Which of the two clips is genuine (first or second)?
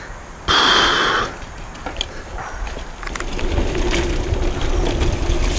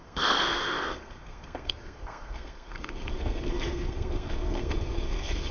first